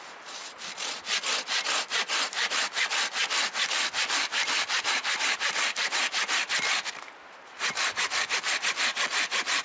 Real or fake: real